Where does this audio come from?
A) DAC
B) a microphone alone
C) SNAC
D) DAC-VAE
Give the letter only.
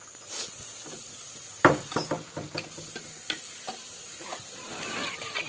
B